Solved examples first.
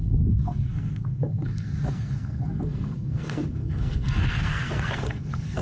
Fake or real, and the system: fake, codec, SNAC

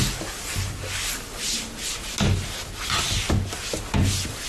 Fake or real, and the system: real